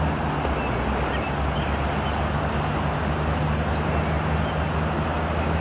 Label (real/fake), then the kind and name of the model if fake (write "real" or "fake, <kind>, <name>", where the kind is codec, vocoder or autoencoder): real